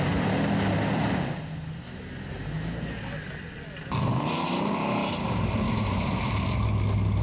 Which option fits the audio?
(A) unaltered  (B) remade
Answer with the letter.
A